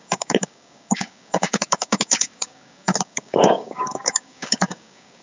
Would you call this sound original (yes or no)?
no